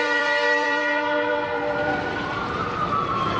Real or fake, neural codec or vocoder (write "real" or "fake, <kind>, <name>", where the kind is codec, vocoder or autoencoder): fake, vocoder, BigVGAN v2